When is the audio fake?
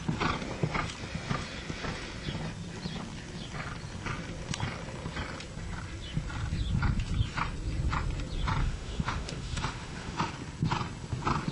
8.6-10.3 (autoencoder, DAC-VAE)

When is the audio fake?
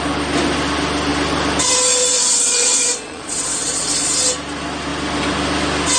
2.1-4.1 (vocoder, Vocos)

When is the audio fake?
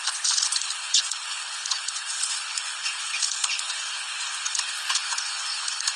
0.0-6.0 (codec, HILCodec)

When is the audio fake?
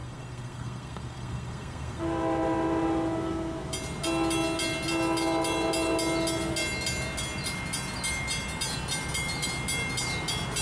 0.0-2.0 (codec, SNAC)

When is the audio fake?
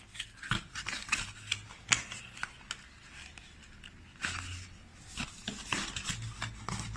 none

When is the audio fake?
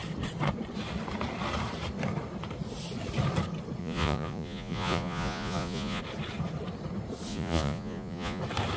3.8-6.0 (vocoder, Vocos); 7.3-8.4